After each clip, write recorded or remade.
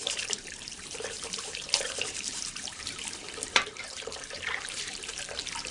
remade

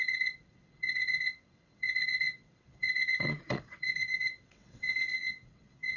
remade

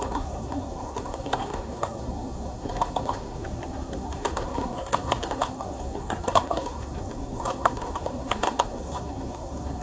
remade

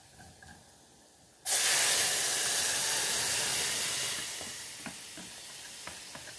recorded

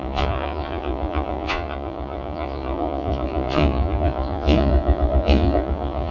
remade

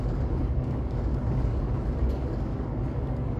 remade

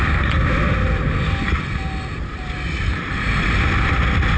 recorded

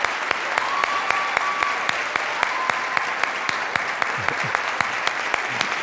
recorded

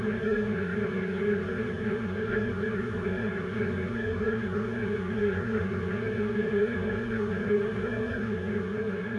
remade